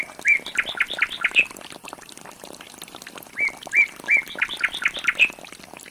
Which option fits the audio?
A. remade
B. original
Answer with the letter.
B